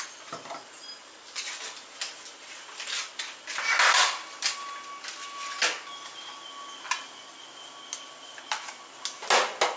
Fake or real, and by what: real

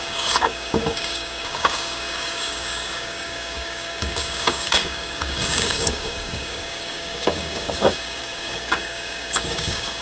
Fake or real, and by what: fake, codec, DAC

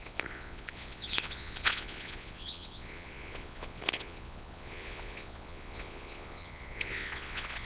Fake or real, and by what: fake, vocoder, Vocos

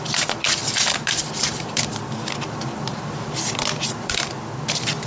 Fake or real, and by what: fake, vocoder, BigVGAN v2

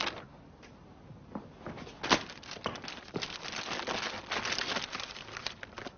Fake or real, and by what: real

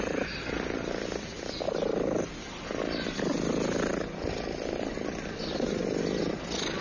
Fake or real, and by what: real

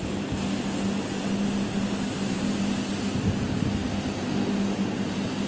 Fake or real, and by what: real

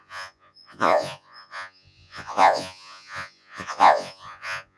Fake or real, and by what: fake, vocoder, Vocos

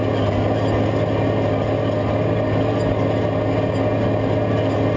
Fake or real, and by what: real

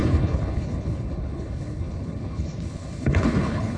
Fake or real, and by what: fake, codec, HILCodec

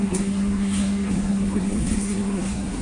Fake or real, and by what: fake, codec, SNAC